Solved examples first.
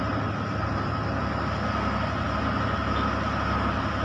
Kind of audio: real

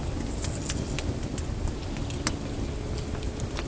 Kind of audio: real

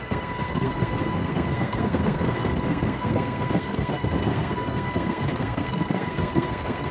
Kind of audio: fake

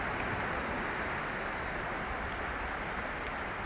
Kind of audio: real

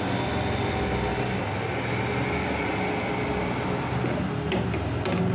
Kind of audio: real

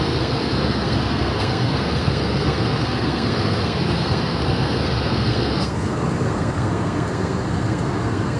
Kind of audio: fake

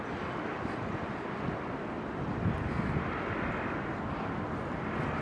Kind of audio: real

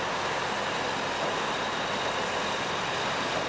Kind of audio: real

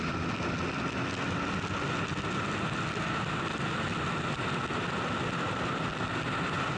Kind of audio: real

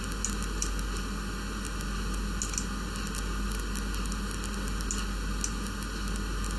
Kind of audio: real